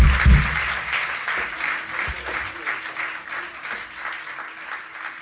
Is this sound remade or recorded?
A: recorded